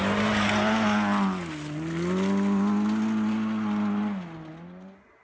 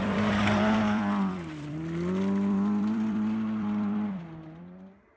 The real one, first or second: first